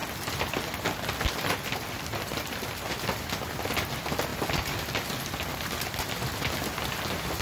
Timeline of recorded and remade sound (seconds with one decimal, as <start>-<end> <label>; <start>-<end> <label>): 0.0-7.4 recorded